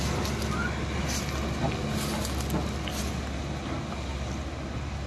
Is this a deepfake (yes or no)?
no